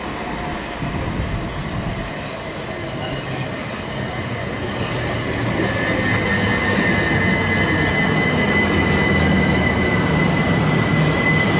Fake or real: real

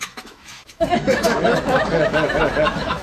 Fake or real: fake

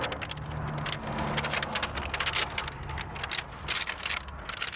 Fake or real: real